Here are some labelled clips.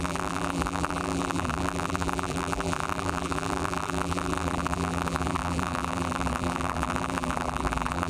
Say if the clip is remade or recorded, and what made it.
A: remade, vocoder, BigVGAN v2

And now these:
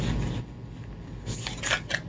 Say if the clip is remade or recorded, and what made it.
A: recorded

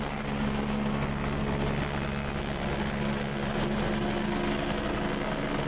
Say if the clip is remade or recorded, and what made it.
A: recorded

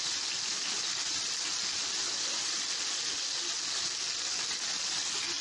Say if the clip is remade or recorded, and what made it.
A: recorded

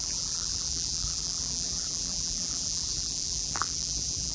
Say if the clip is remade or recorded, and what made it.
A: remade, vocoder, BigVGAN v2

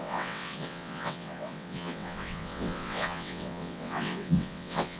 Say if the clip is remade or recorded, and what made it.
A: remade, vocoder, WaveNeXt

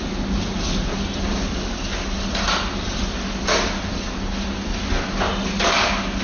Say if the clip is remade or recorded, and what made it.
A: recorded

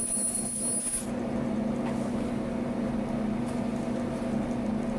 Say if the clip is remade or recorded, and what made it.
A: recorded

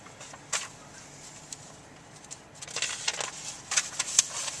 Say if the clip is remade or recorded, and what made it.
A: recorded